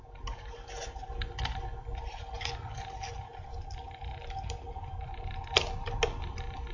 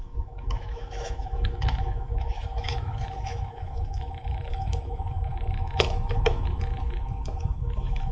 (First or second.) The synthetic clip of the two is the second